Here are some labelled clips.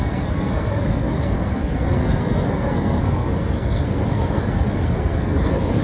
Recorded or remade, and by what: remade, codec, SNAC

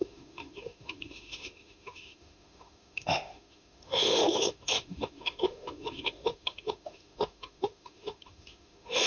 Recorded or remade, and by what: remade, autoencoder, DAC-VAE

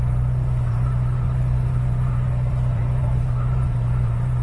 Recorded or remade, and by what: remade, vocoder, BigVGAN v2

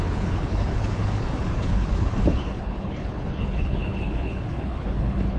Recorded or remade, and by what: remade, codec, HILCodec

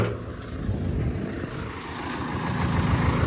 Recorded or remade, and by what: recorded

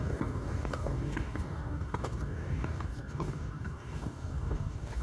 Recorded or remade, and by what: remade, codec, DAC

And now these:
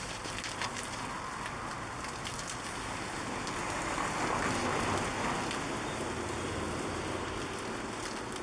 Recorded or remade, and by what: recorded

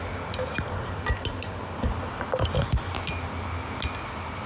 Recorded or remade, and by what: recorded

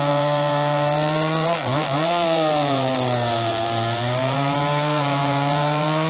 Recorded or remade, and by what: remade, vocoder, BigVGAN v2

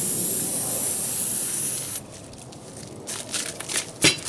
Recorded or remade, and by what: recorded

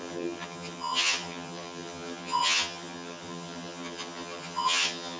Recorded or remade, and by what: remade, vocoder, HiFi-GAN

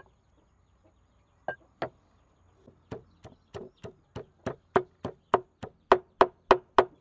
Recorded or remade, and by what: recorded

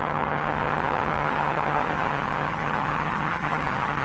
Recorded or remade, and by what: remade, vocoder, HiFi-GAN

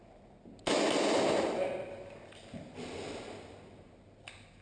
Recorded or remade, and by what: recorded